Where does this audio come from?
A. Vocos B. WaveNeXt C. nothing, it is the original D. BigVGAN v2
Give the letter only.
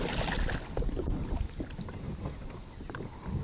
C